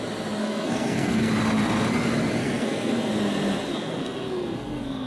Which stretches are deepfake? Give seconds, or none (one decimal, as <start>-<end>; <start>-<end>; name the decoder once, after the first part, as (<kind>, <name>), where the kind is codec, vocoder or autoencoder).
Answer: 0.4-1.3 (codec, SNAC); 2.4-3.1; 3.7-5.1